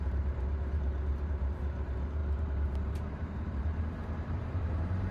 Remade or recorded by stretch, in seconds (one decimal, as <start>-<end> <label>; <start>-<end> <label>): 0.0-5.1 remade